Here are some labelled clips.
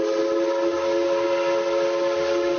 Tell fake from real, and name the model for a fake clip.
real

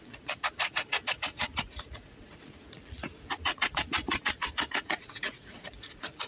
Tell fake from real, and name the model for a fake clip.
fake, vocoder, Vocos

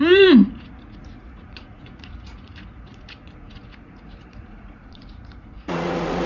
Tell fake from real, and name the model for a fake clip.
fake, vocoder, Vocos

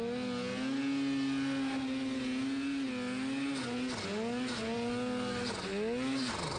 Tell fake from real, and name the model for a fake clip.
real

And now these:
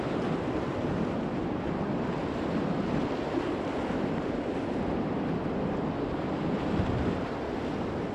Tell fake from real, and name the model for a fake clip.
real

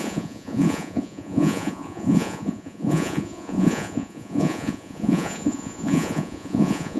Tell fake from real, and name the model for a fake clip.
fake, vocoder, Vocos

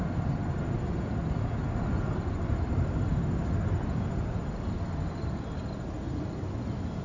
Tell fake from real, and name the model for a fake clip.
real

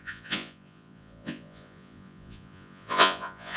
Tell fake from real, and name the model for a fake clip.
fake, vocoder, Vocos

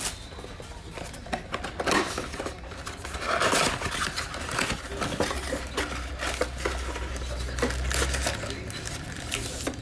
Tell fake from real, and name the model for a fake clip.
real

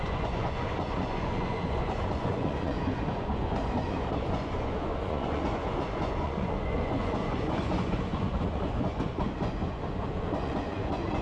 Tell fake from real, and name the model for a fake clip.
fake, vocoder, Vocos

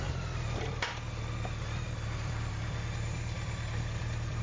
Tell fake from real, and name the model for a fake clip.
real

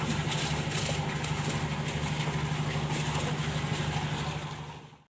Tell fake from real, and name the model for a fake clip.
real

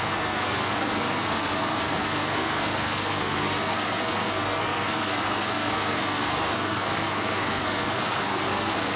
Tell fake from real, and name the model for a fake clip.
fake, codec, SNAC